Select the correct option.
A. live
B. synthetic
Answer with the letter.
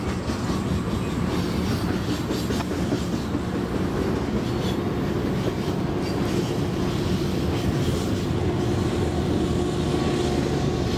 A